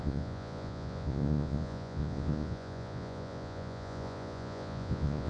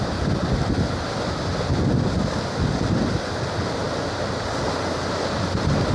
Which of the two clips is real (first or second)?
second